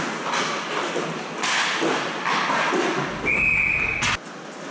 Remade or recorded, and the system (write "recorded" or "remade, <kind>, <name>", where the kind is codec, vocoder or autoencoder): recorded